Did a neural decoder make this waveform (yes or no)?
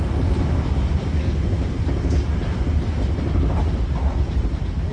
no